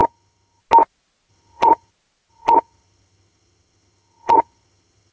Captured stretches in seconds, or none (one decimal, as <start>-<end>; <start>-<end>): 0.6-1.3; 1.9-2.3